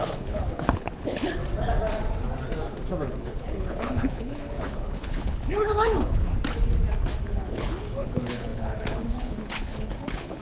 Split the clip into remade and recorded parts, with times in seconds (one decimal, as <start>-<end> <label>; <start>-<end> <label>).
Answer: 0.0-1.4 remade; 1.4-3.1 recorded; 3.1-6.3 remade; 6.3-7.2 recorded; 7.2-10.4 remade